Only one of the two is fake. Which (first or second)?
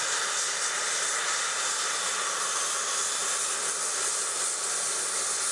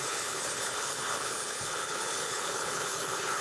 second